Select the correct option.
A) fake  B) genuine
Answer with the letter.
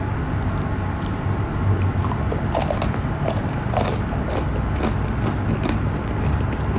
B